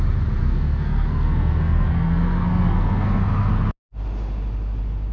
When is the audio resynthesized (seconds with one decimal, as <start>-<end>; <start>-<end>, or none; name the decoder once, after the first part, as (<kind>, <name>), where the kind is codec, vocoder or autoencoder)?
0.4-3.5 (codec, SNAC)